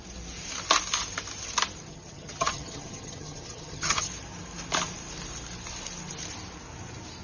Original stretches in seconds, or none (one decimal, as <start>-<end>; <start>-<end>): 0.0-1.9; 4.1-7.2